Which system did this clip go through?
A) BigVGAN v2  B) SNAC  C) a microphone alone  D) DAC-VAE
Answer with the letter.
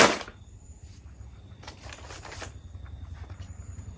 A